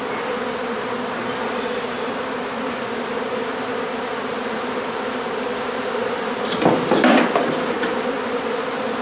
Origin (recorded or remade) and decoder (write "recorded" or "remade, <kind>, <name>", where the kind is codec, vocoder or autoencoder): recorded